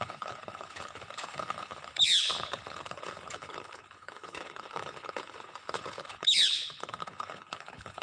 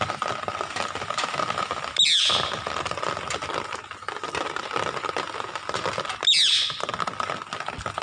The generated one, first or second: first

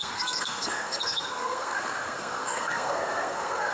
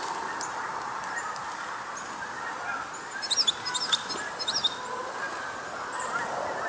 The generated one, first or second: first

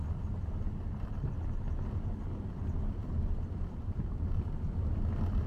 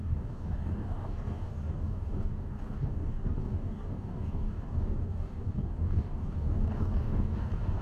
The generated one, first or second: second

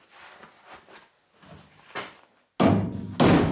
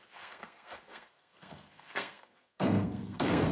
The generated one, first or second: second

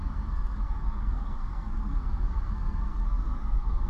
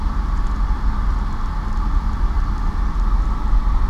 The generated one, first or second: first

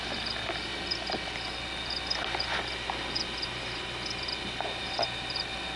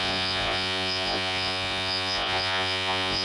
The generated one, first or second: second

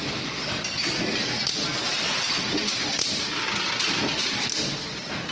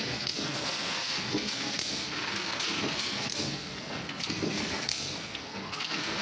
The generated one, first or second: second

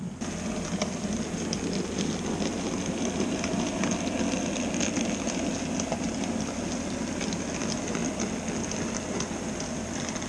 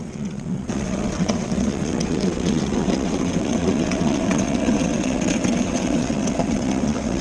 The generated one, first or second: second